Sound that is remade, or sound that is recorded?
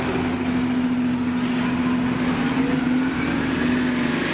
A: recorded